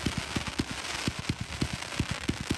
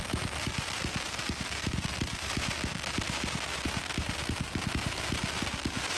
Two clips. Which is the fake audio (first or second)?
second